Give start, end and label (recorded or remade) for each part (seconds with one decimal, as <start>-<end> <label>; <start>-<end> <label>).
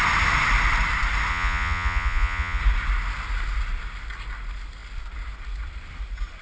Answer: 0.0-1.3 recorded; 1.3-2.6 remade; 2.6-6.4 recorded